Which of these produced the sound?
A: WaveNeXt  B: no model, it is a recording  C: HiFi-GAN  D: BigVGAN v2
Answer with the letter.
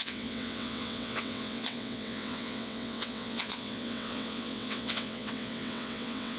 A